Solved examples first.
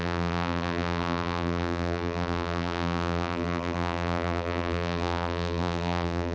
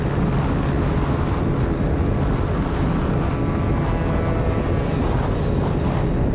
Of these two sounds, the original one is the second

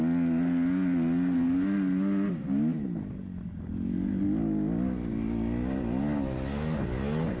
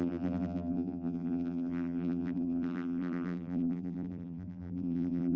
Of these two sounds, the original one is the first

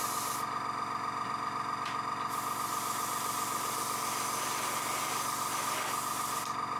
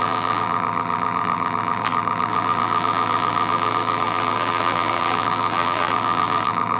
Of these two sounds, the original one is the first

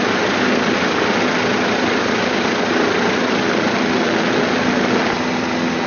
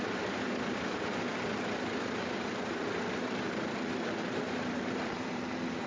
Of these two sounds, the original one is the first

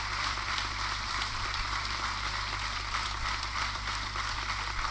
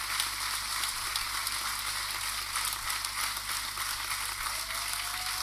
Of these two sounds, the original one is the second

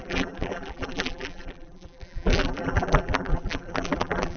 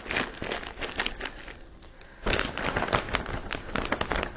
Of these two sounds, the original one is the second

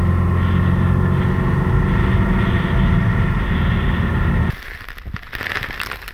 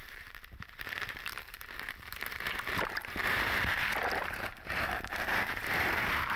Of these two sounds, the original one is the first